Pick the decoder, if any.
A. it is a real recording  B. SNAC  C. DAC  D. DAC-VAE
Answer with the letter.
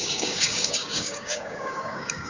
C